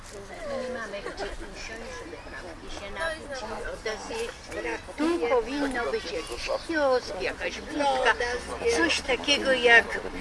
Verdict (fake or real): real